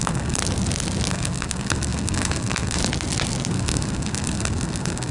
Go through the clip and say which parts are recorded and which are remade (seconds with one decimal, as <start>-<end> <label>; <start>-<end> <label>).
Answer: 0.0-0.4 remade; 0.4-1.1 recorded; 1.1-2.8 remade; 2.8-3.5 recorded; 3.5-5.1 remade